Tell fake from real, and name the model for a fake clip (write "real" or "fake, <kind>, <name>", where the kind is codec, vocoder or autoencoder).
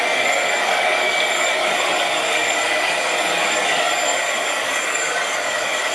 fake, codec, DAC